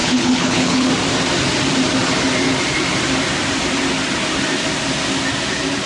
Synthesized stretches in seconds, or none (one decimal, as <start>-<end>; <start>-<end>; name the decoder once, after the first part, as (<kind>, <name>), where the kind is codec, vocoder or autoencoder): 0.0-0.9 (codec, HILCodec)